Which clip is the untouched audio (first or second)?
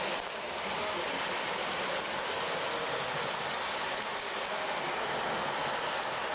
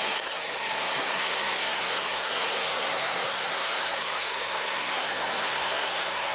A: first